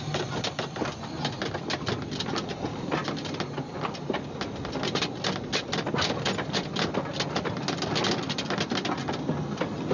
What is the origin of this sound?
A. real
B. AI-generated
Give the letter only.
A